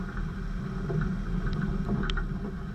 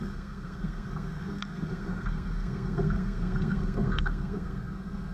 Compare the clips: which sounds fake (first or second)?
second